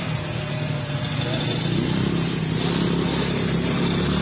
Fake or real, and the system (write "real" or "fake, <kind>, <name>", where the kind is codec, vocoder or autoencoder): real